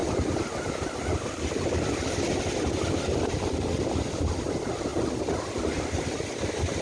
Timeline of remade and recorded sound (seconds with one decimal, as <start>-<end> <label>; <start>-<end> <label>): 0.0-6.8 recorded